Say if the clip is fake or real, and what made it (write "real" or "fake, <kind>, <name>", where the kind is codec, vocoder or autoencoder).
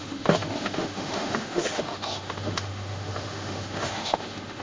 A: fake, autoencoder, DAC-VAE